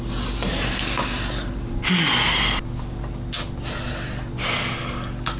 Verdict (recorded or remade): recorded